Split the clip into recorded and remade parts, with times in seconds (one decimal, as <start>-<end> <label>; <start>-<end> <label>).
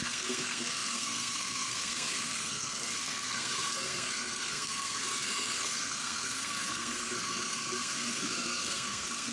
0.0-9.3 remade